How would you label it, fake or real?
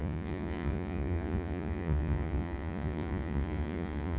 fake